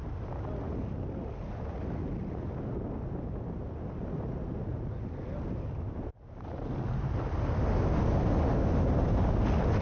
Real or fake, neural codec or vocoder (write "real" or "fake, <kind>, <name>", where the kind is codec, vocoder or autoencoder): real